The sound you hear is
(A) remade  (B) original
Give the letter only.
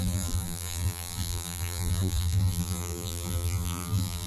A